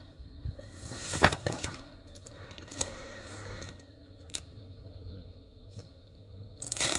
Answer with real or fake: fake